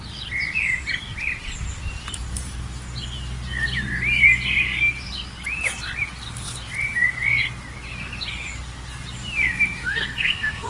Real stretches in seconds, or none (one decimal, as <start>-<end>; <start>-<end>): 0.0-9.8